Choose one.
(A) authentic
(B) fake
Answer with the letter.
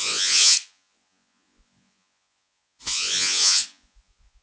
B